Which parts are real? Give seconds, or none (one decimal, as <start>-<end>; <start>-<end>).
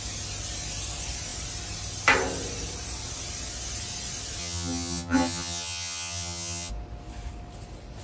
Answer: 0.0-4.4; 6.7-8.0